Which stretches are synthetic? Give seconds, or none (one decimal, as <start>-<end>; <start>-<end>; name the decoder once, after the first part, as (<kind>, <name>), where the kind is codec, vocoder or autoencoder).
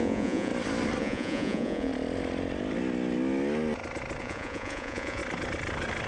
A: 0.0-0.5 (vocoder, Vocos); 1.0-1.9; 4.2-5.2